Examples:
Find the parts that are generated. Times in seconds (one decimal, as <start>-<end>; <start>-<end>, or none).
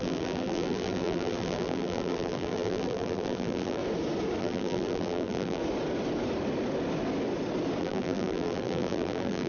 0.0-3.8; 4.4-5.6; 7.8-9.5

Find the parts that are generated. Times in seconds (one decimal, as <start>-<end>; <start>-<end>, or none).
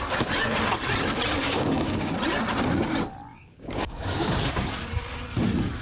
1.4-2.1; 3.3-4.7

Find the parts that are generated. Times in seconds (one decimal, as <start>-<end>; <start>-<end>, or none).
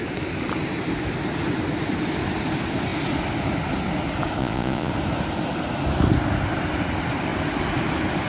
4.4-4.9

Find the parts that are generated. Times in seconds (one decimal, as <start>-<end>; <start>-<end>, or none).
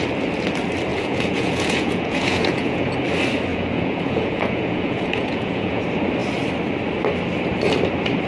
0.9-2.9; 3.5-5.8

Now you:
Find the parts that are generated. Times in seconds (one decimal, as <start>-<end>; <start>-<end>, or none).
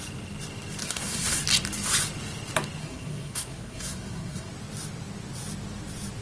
0.8-1.4; 2.8-4.5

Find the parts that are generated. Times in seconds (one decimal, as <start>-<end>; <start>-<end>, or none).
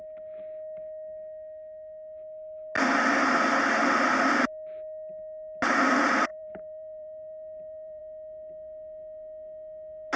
6.3-8.0